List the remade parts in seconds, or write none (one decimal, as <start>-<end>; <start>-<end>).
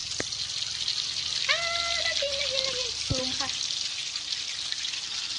none